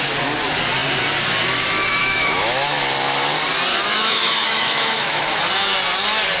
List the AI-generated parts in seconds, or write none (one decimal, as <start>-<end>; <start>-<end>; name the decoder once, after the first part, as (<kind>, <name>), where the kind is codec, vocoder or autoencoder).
2.0-2.8 (autoencoder, DAC-VAE); 3.7-5.4